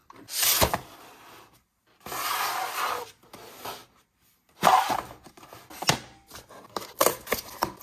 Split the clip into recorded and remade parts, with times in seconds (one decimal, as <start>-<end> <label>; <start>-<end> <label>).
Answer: 0.0-0.7 remade; 0.7-7.8 recorded